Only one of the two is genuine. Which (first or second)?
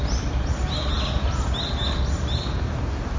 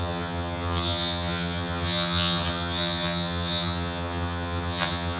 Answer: first